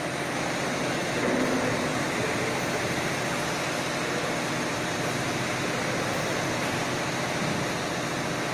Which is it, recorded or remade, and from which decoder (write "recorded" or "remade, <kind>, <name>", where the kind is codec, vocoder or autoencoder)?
recorded